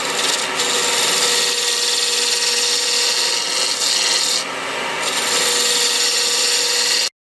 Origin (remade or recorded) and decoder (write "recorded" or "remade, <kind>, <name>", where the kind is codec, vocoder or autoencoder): recorded